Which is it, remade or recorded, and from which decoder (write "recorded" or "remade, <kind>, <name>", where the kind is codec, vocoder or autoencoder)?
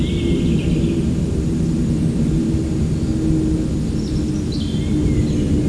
recorded